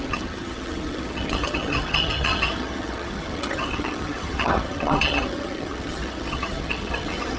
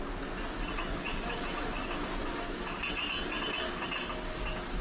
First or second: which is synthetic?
first